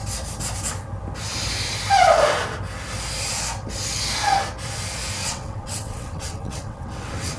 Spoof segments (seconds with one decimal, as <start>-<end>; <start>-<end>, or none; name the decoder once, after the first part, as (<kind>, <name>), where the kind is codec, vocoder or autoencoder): 5.2-7.4 (vocoder, WaveNeXt)